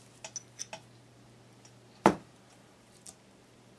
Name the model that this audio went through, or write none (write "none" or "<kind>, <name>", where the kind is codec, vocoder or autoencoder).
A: none